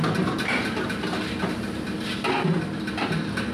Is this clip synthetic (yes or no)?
no